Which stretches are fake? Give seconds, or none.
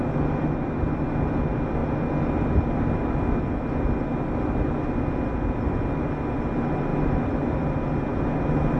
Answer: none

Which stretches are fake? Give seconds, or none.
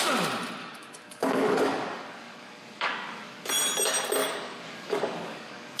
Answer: 0.6-3.5 (codec, DAC); 4.2-5.8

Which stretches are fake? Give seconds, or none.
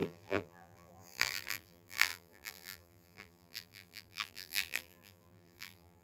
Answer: 0.0-6.0 (vocoder, BigVGAN v2)